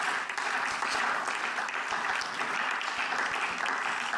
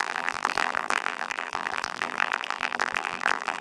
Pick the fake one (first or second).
second